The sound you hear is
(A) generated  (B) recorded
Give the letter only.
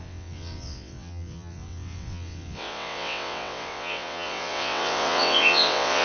A